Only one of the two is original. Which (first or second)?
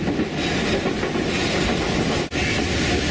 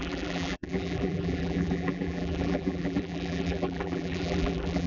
first